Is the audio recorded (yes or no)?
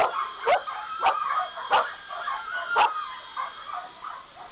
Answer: yes